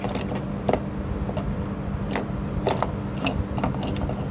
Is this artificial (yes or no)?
no